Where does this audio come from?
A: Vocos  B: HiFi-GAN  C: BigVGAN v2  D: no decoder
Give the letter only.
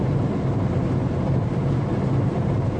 C